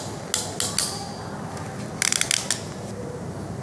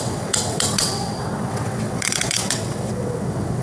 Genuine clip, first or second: first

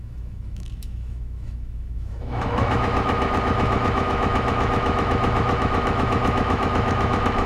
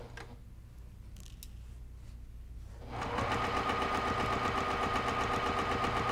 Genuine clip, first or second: second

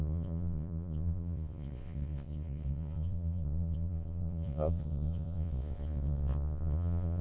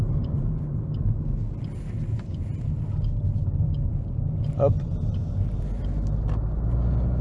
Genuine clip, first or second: second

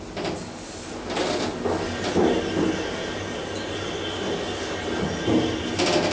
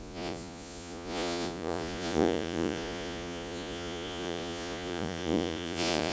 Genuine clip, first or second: first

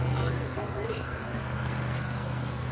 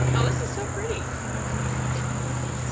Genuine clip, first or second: second